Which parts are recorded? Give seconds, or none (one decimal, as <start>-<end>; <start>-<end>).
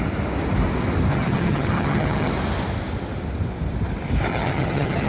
0.0-1.1; 2.3-4.3